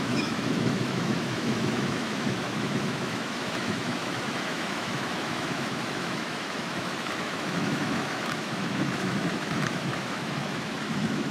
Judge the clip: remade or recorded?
remade